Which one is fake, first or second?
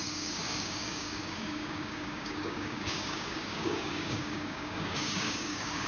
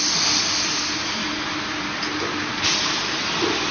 first